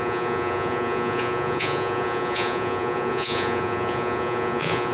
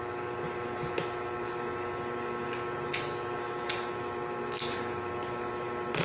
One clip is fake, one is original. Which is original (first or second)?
second